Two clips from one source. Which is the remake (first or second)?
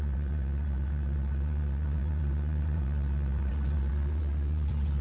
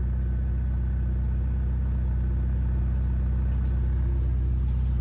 first